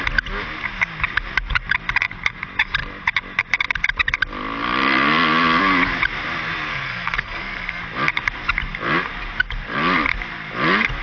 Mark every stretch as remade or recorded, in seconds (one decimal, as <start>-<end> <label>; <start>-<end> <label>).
0.0-6.7 recorded; 6.7-7.8 remade; 7.8-11.0 recorded